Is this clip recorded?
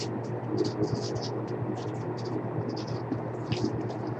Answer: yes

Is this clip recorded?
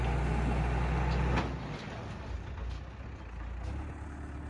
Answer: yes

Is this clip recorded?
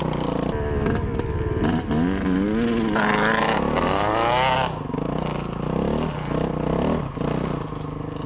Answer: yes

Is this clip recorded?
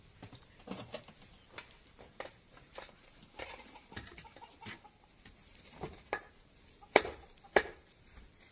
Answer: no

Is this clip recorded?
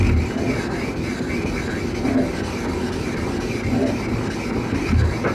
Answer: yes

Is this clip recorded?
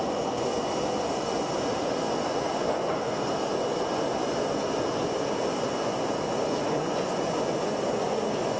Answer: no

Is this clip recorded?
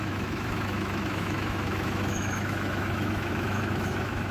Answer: no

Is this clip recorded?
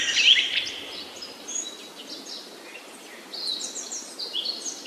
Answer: yes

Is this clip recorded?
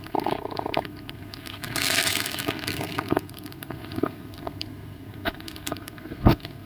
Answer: no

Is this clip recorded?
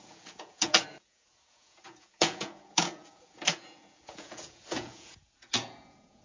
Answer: no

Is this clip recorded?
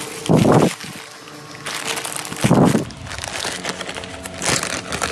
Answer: yes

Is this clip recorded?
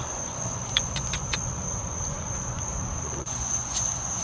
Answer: no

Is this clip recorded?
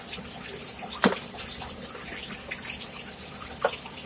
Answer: no